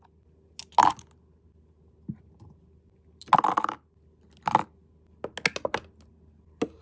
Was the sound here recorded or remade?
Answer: recorded